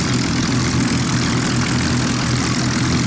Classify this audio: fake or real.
real